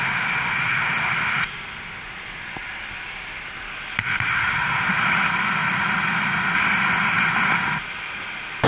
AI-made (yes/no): no